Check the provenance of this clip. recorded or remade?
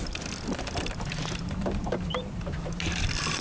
remade